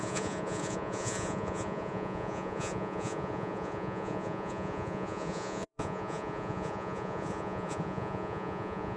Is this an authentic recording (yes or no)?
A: no